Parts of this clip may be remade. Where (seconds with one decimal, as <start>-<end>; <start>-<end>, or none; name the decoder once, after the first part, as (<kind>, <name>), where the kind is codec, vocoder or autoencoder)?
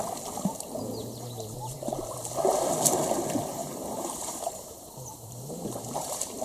3.6-6.4 (vocoder, BigVGAN v2)